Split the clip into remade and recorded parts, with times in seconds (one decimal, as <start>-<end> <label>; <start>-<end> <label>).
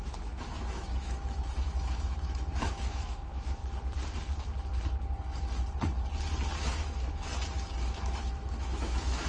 0.0-3.6 remade; 3.6-6.6 recorded; 6.6-7.3 remade; 7.3-7.9 recorded; 7.9-9.3 remade